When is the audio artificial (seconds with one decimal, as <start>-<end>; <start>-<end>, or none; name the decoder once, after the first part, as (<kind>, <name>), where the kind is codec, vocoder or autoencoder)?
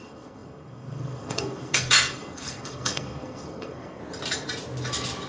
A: 0.0-4.0 (codec, SNAC)